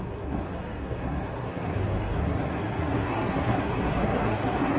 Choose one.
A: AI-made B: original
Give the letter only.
A